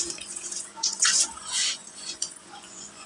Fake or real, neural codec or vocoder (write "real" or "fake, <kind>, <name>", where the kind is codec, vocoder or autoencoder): fake, vocoder, Vocos